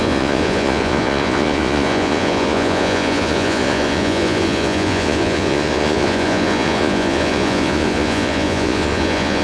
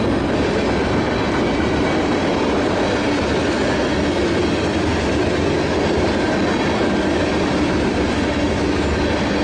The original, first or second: second